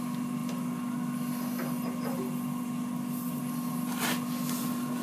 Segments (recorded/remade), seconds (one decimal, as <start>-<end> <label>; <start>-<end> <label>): 0.0-5.0 recorded